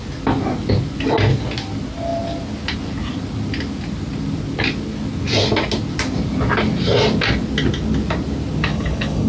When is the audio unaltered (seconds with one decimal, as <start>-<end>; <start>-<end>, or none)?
0.0-8.7